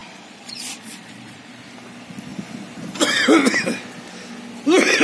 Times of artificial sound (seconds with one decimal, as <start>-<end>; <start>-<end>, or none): 0.0-1.5